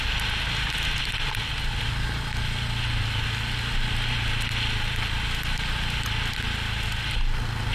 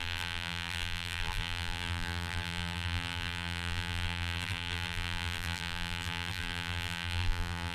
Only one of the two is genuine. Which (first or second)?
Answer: first